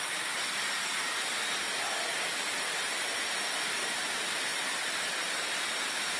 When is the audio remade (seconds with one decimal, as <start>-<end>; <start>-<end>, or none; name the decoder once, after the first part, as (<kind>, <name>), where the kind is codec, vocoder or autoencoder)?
none